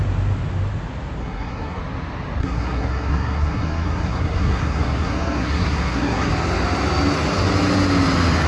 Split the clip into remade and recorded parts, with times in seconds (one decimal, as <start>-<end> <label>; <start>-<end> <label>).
0.0-1.2 recorded; 1.2-1.8 remade; 1.8-2.4 recorded; 2.4-6.3 remade; 6.3-8.5 recorded